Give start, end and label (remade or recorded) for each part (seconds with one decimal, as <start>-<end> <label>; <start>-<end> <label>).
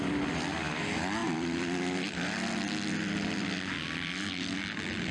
0.0-5.1 recorded